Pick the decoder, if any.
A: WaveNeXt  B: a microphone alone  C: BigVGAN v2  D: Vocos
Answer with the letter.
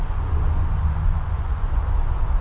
D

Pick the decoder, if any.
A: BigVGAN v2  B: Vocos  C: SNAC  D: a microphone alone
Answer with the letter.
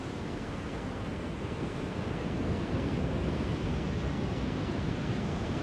C